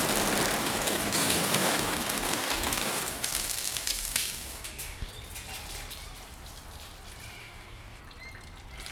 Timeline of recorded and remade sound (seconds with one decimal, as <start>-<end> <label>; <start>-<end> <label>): 0.0-0.6 recorded; 0.6-5.1 remade; 5.1-7.4 recorded; 7.4-8.0 remade; 8.0-8.9 recorded